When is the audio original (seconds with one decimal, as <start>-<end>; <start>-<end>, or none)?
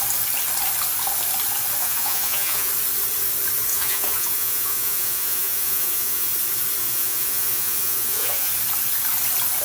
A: 0.0-1.8; 2.7-3.7; 6.3-6.8; 8.5-9.6